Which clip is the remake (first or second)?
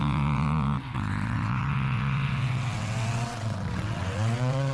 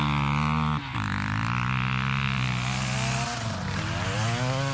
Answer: first